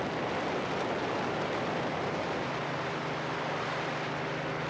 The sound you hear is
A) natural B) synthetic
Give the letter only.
B